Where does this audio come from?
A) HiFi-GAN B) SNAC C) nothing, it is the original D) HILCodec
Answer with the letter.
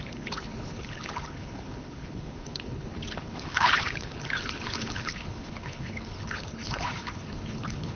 D